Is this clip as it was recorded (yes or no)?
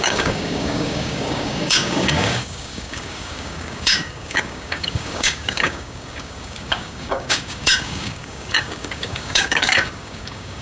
no